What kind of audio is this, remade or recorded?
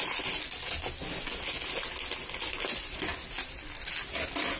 recorded